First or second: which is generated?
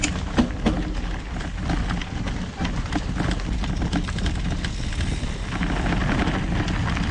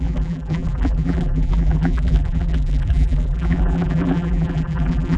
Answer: second